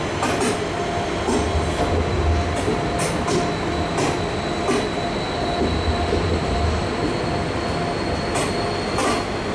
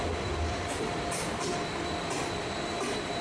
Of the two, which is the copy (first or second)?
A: second